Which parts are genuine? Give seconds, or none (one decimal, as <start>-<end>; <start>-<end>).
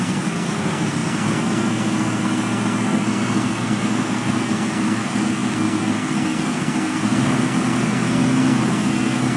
none